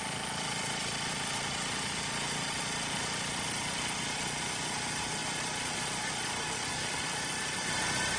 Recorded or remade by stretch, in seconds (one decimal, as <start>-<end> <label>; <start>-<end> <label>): 0.0-8.2 recorded